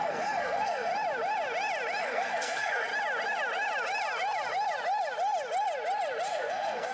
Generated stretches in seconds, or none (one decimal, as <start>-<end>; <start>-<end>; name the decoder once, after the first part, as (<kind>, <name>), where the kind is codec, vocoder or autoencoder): 0.0-0.9 (codec, SNAC); 2.0-2.9; 6.3-6.9